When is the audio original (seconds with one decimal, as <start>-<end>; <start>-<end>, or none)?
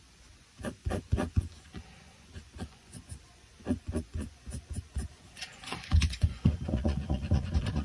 none